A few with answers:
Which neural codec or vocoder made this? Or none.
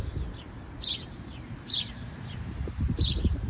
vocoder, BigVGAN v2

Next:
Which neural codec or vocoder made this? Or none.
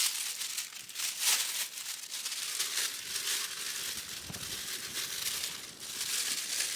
none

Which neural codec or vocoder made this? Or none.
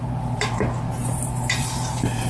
vocoder, BigVGAN v2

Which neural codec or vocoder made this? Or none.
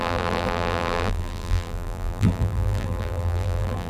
vocoder, BigVGAN v2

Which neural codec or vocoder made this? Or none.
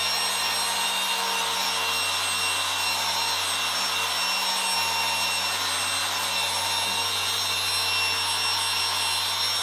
none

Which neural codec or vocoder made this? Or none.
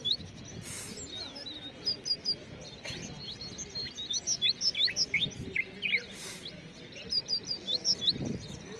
none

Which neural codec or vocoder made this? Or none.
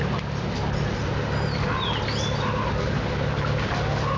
none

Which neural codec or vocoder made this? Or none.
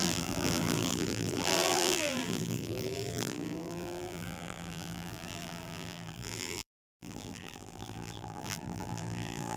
vocoder, BigVGAN v2